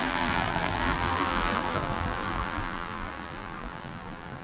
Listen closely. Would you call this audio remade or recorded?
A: remade